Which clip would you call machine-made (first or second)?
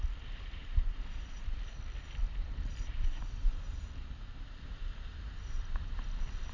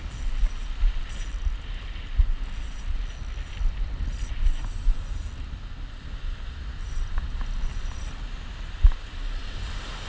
first